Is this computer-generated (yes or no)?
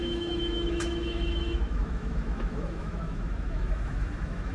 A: yes